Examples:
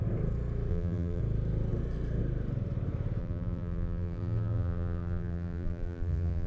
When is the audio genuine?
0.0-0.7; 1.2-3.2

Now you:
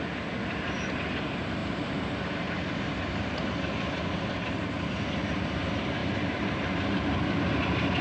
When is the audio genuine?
0.0-1.6; 3.4-8.0